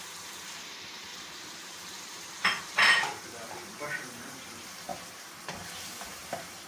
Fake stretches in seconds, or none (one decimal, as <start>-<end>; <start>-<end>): 0.0-4.9; 6.0-6.7